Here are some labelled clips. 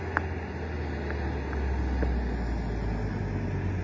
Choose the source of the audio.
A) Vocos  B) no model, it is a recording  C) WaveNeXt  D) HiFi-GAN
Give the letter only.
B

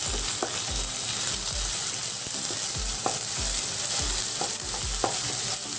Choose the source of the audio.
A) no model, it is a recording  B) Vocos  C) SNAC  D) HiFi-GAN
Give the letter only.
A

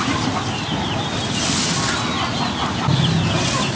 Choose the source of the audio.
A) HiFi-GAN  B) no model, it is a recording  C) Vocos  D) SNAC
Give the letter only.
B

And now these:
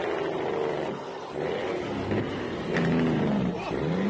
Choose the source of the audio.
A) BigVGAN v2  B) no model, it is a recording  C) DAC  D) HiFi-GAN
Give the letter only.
B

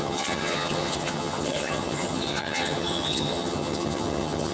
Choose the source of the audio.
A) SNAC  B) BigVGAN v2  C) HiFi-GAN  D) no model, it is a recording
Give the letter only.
C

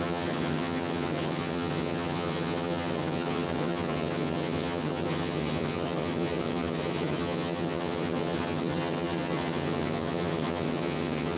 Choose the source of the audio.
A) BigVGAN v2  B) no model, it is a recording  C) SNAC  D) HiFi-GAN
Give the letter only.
D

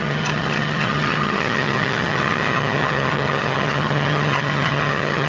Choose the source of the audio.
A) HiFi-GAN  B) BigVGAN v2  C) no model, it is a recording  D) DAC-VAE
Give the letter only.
A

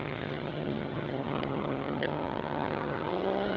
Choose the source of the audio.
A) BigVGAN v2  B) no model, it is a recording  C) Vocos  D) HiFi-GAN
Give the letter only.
D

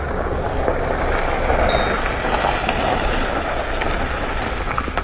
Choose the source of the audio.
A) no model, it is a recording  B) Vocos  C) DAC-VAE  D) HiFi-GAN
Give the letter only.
A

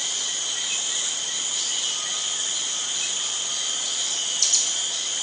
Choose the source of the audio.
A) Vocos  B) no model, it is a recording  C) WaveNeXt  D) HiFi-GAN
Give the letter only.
B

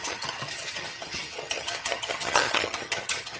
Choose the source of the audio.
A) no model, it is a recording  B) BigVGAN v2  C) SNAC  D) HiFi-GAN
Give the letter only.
D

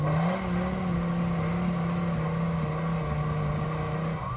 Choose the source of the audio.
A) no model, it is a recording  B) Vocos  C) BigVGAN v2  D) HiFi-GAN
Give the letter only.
A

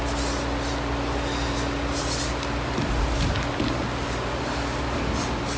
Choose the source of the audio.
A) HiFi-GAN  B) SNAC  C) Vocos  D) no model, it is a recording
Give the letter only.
D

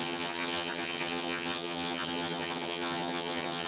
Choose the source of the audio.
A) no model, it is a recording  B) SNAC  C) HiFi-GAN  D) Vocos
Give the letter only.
C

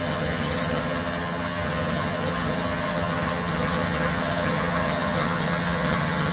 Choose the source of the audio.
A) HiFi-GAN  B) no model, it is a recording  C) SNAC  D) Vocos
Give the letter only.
A